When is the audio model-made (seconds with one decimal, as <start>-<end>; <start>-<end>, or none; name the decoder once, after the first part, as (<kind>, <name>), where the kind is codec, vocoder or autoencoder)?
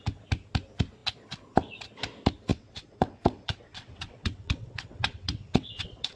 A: 2.5-6.2 (vocoder, WaveNeXt)